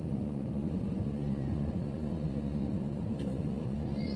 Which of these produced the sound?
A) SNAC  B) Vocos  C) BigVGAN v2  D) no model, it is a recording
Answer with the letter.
B